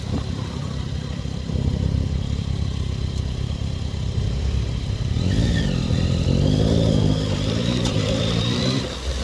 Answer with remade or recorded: remade